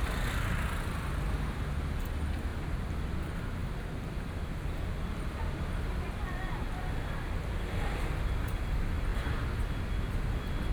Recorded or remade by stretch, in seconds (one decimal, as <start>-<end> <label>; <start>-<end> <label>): 0.0-10.7 recorded

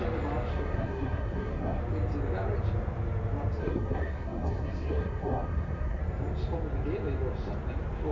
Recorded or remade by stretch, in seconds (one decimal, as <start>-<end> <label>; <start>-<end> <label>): 0.0-0.5 recorded; 0.5-1.8 remade; 1.8-3.6 recorded; 3.6-6.0 remade; 6.0-8.1 recorded

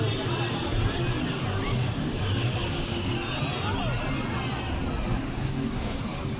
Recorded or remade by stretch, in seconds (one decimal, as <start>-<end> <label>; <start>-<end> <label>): 0.0-1.7 recorded; 1.7-3.1 remade; 3.1-5.1 recorded; 5.1-6.0 remade; 6.0-6.4 recorded

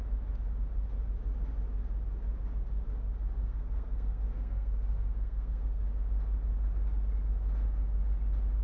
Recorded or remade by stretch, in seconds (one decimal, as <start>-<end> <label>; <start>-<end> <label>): 0.0-3.4 recorded; 3.4-5.8 remade; 5.8-8.6 recorded